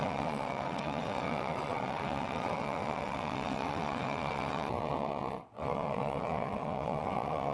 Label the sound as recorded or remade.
remade